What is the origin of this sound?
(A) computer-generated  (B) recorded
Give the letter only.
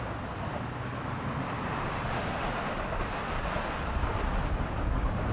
B